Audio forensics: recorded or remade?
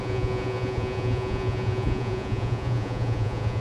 remade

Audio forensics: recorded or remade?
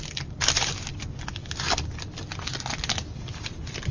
recorded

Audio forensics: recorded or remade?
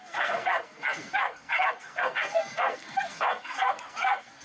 remade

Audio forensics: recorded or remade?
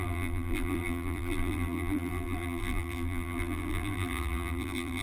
remade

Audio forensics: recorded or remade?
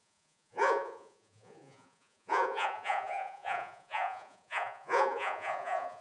remade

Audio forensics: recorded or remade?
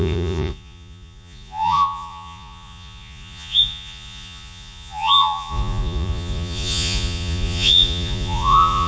remade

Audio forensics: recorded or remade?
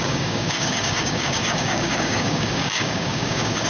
remade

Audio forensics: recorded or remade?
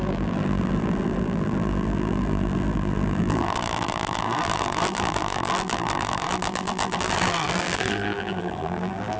remade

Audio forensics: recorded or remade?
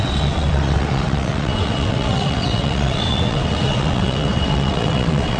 remade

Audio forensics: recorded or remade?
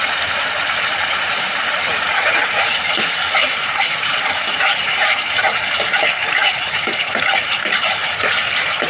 remade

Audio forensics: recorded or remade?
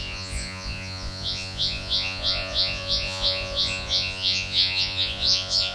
remade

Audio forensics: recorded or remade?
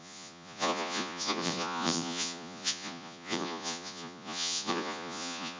remade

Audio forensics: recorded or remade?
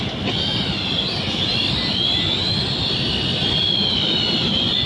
recorded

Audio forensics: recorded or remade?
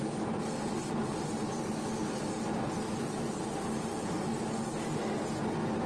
recorded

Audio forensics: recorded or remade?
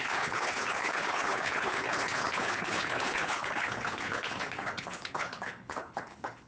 remade